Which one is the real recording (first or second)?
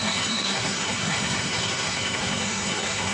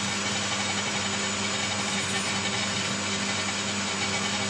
second